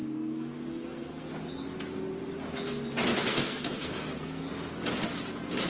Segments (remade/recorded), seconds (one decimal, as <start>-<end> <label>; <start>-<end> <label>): 0.0-1.3 remade; 1.3-3.3 recorded; 3.3-4.5 remade; 4.5-5.7 recorded